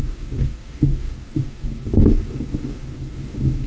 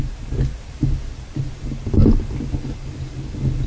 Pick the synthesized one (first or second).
first